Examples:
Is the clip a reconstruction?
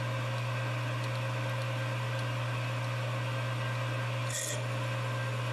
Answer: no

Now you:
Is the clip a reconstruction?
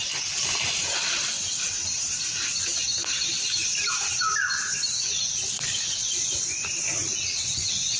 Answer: no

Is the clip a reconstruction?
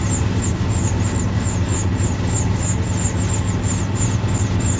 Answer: no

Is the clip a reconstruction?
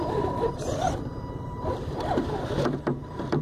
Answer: yes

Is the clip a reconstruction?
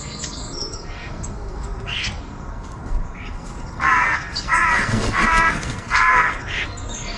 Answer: yes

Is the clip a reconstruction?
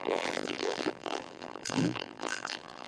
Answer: yes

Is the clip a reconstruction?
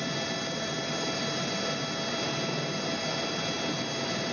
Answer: no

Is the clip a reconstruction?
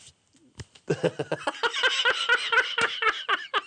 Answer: no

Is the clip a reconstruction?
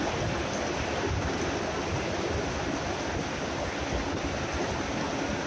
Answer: no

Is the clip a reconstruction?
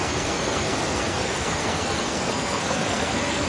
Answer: yes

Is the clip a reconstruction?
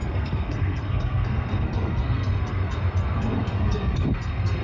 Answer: yes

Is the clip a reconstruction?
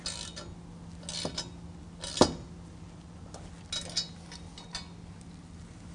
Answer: no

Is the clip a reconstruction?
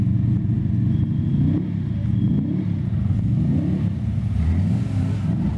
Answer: no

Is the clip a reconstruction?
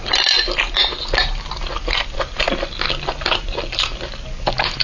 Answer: no